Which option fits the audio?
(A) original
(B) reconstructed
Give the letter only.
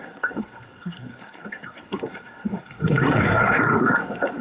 B